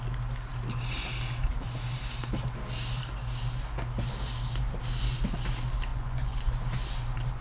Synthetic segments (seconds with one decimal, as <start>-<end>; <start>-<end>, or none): 5.9-6.5